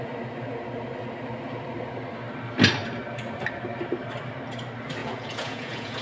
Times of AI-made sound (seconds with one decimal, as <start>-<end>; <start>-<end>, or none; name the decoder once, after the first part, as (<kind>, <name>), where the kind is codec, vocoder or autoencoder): 5.0-6.0 (vocoder, Vocos)